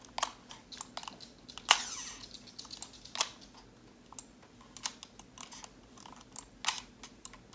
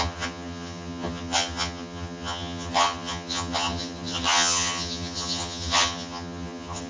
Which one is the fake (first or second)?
second